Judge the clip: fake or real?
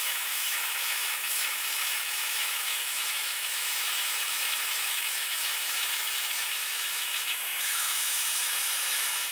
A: fake